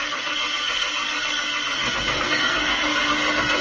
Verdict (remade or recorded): remade